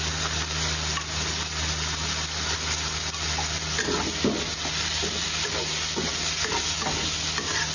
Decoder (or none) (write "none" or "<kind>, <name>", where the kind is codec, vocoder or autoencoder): none